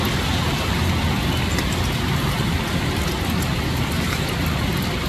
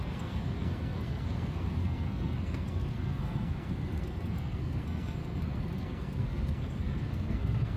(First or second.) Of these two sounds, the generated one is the second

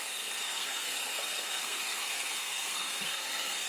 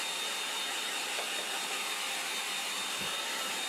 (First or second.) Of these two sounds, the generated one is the first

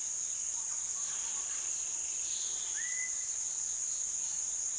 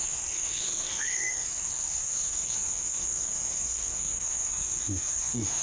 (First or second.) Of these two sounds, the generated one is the second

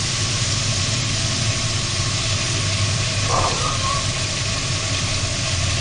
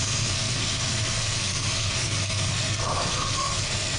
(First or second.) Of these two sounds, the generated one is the second